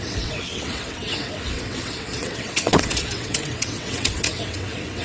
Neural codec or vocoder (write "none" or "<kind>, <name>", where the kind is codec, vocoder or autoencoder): vocoder, WaveNeXt